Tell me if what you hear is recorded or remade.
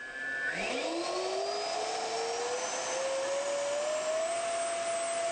recorded